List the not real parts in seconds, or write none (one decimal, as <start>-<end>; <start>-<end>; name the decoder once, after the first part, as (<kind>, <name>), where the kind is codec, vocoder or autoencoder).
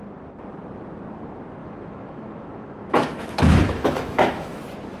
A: 1.6-4.6 (autoencoder, DAC-VAE)